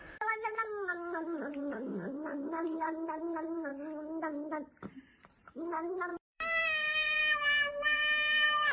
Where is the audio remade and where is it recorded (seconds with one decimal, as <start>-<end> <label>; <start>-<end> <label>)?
0.0-3.7 remade; 3.7-5.2 recorded; 5.2-7.2 remade; 7.2-7.7 recorded; 7.7-8.7 remade